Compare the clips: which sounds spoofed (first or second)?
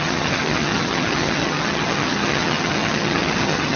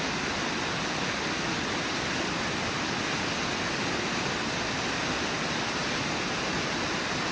first